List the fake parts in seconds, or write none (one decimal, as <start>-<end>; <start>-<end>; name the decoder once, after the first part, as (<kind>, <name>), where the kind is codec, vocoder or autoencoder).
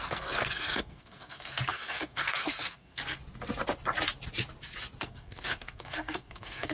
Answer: 0.0-3.2 (codec, SNAC); 5.0-6.7